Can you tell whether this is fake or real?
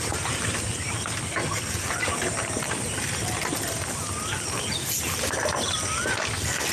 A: real